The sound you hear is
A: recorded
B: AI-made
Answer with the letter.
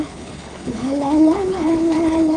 B